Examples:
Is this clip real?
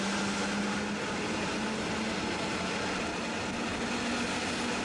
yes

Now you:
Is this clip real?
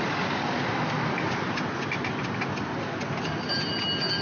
yes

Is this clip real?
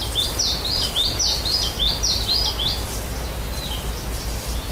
yes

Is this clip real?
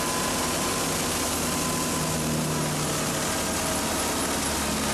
yes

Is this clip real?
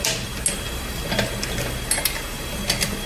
yes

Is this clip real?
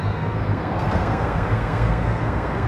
no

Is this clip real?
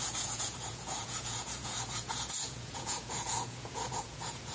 no